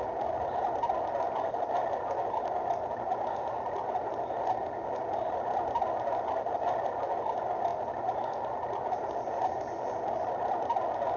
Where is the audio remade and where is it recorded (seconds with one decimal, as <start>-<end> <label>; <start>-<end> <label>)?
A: 0.0-11.2 recorded